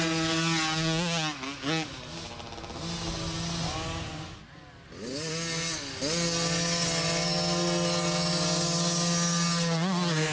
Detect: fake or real real